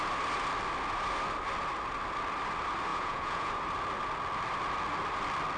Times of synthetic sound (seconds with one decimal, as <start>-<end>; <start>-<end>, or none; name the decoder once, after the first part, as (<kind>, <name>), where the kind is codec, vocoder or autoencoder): 2.9-3.5 (vocoder, Vocos)